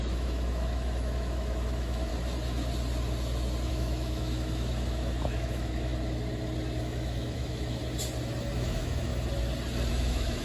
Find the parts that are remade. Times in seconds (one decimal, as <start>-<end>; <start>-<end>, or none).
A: 0.0-2.1; 3.7-5.9; 6.8-7.8; 8.5-9.1; 9.9-10.4